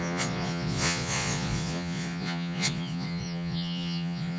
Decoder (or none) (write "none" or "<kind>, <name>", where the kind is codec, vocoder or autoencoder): vocoder, Vocos